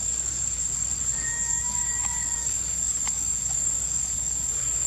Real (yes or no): no